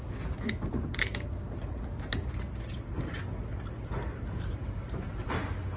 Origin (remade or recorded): recorded